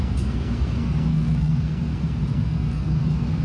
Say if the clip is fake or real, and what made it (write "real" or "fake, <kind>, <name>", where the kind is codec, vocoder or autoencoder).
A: fake, codec, SNAC